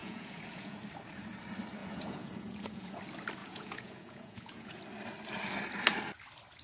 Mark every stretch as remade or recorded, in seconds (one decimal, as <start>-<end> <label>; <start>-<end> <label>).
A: 0.0-0.8 remade; 0.8-1.8 recorded; 1.8-3.0 remade; 3.0-3.4 recorded; 3.4-4.8 remade; 4.8-6.6 recorded